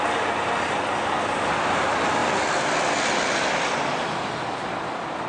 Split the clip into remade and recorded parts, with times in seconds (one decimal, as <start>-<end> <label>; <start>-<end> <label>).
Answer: 0.0-5.3 recorded